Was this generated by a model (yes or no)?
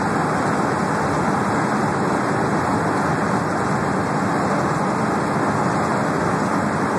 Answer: no